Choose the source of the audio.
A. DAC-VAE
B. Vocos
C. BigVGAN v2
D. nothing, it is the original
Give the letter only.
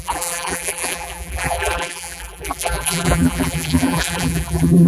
C